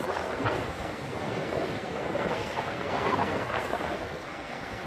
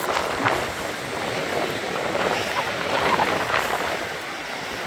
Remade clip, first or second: first